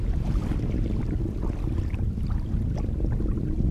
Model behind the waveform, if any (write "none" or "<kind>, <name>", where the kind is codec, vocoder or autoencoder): none